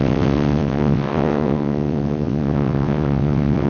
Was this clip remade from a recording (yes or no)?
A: yes